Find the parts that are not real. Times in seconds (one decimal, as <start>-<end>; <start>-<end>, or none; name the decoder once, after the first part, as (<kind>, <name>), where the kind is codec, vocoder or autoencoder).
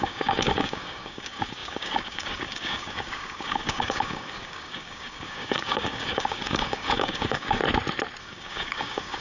0.0-7.6 (codec, DAC); 8.2-9.2